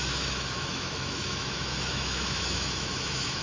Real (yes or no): no